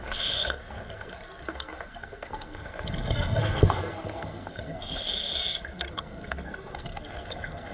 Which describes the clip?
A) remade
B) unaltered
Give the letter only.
A